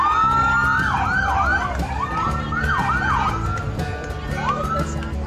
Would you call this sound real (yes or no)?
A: yes